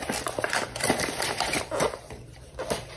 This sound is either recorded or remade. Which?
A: remade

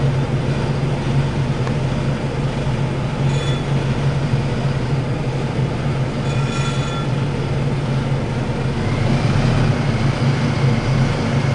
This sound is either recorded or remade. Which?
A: recorded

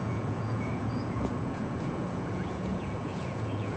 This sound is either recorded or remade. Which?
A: remade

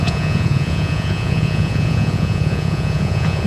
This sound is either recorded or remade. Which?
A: remade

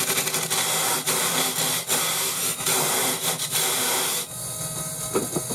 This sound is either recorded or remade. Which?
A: recorded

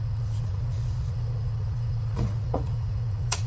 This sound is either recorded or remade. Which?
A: remade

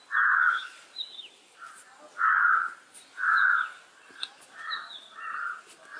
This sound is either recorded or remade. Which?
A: recorded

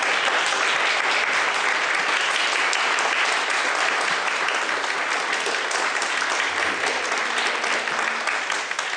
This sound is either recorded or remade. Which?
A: recorded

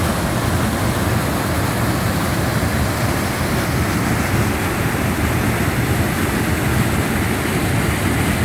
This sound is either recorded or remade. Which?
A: recorded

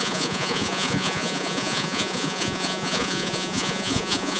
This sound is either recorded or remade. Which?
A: remade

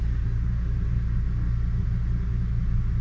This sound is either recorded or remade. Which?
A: recorded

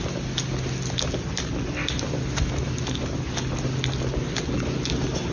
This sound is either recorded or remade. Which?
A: recorded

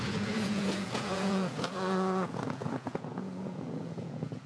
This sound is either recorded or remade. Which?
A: remade